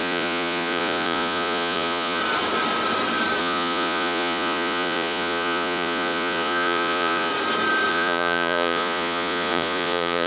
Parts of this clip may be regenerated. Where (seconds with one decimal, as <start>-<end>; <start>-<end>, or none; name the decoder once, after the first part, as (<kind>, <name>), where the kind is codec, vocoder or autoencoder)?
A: 0.0-2.2 (vocoder, Vocos); 3.4-7.3; 7.9-10.3